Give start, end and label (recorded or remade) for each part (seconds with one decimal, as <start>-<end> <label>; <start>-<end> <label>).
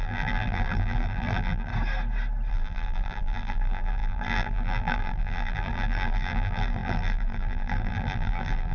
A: 0.0-1.7 remade; 1.7-2.5 recorded; 2.5-8.7 remade